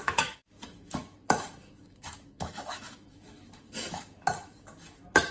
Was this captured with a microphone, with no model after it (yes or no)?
no